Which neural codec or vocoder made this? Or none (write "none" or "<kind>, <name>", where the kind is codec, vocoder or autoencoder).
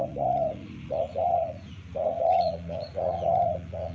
vocoder, Vocos